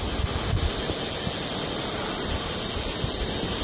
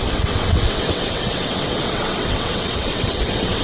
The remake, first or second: second